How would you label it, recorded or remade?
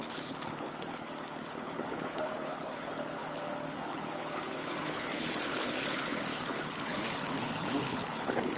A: remade